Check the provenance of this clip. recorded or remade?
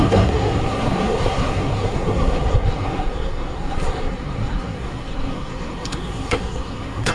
remade